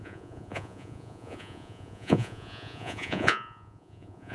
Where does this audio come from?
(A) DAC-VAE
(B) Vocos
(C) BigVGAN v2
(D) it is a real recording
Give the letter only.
B